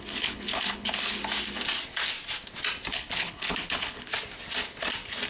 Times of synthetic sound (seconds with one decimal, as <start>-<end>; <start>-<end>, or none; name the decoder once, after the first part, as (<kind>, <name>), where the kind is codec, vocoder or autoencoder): 0.0-1.2 (codec, HILCodec); 2.9-4.1